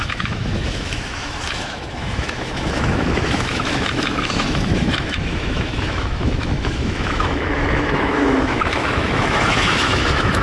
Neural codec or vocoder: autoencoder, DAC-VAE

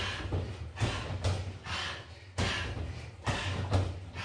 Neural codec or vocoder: none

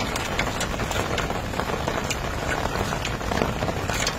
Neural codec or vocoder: none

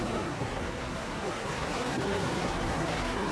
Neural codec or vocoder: codec, SNAC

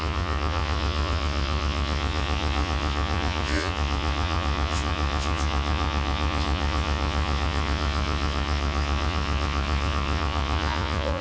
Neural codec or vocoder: vocoder, Vocos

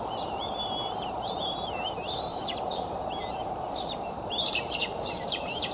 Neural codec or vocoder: vocoder, BigVGAN v2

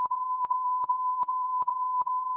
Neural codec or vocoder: vocoder, Vocos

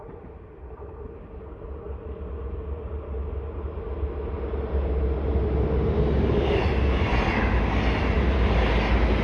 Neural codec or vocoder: none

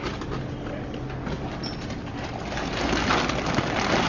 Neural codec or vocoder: none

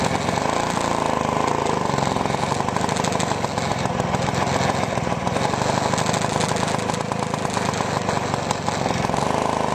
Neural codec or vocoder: none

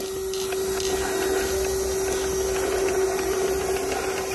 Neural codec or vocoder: none